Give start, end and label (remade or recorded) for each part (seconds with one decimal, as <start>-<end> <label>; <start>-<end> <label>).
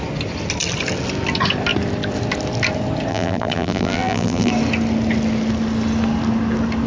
0.0-3.1 recorded; 3.1-4.5 remade; 4.5-6.9 recorded